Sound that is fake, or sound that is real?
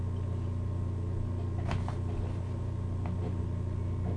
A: real